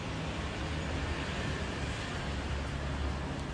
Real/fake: real